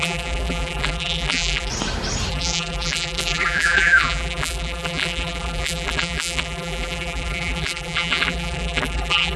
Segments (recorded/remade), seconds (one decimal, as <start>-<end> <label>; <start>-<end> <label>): 0.0-1.7 remade; 1.7-2.3 recorded; 2.3-9.4 remade